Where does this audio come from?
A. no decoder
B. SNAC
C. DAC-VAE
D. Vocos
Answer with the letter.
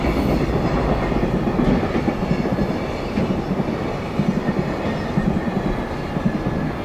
A